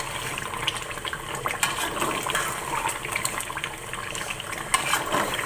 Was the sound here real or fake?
fake